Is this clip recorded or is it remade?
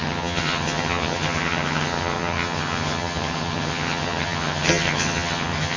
remade